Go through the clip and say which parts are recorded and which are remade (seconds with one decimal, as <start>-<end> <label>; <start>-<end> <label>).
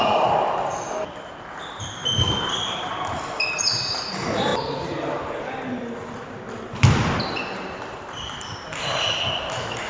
0.0-2.0 remade; 2.0-3.6 recorded; 3.6-4.5 remade; 4.5-5.1 recorded; 5.1-9.9 remade